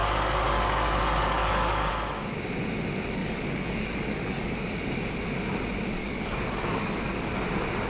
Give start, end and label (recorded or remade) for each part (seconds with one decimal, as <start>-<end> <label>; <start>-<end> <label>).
0.0-1.9 remade; 1.9-3.2 recorded; 3.2-4.7 remade; 4.7-6.0 recorded; 6.0-7.3 remade; 7.3-7.9 recorded